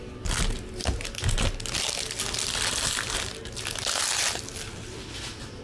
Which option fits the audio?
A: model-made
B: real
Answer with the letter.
B